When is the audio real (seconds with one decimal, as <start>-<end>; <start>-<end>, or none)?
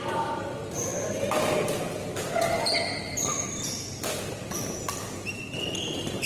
0.0-6.3